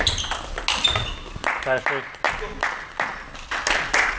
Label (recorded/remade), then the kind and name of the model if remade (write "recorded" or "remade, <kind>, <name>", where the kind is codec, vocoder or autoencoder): recorded